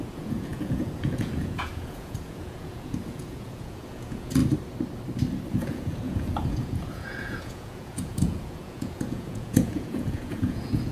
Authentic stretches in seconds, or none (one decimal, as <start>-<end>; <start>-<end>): 4.4-5.5